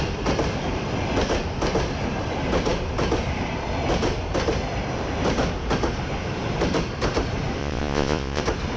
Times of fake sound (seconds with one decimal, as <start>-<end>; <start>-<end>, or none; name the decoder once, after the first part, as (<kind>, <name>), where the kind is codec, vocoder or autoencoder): 7.6-8.4 (vocoder, Vocos)